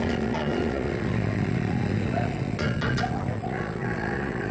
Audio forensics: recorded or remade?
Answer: remade